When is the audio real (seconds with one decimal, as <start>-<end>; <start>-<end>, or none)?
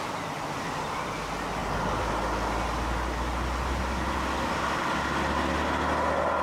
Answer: 0.0-6.4